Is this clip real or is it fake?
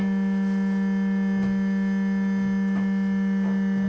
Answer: real